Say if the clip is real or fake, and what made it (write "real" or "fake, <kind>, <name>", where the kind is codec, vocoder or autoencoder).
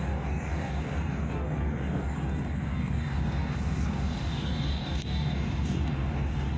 fake, codec, DAC